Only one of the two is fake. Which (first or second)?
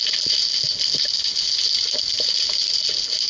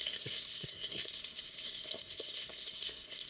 second